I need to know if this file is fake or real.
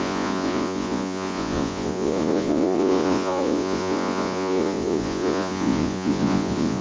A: fake